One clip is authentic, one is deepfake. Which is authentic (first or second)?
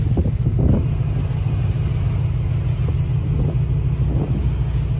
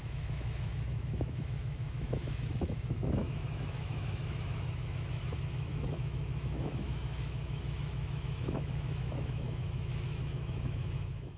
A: first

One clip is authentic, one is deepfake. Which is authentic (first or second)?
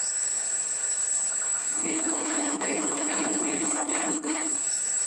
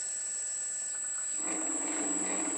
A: second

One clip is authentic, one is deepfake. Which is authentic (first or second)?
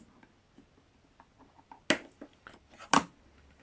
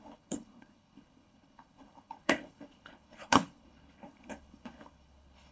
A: first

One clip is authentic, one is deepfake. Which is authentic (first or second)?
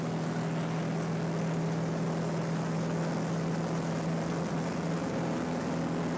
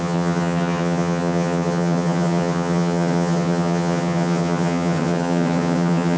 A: first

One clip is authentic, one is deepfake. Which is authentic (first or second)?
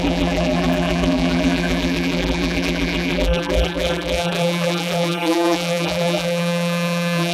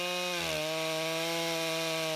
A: second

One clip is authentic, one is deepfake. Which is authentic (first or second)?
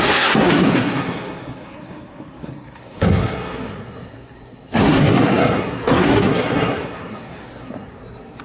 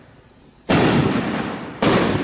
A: second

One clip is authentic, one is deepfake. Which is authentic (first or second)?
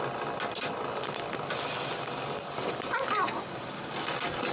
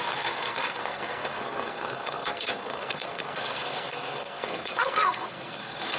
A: first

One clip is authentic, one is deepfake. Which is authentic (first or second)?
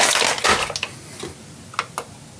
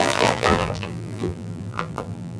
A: first